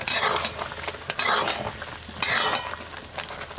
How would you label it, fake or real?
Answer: real